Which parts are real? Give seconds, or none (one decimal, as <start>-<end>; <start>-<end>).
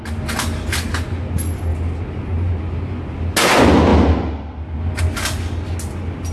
0.0-6.3